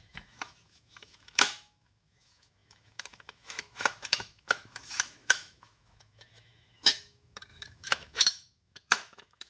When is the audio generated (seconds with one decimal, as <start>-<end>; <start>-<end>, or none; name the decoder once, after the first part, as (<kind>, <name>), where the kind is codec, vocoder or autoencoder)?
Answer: 0.0-9.5 (autoencoder, DAC-VAE)